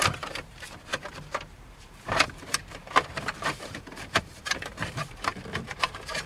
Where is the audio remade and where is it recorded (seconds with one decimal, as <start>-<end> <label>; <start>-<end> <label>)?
0.0-6.3 remade